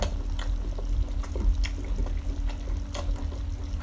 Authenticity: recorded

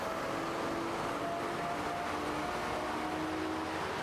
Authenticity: recorded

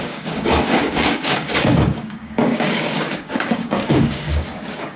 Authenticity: remade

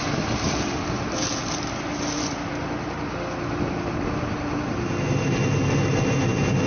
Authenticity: recorded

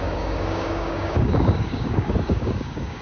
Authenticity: remade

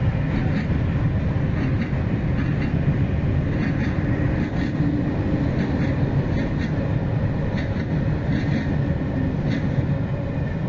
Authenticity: recorded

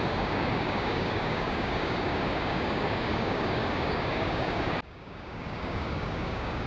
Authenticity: remade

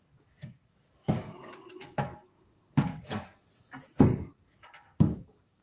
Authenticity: remade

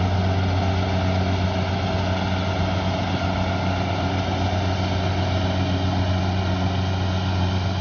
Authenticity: recorded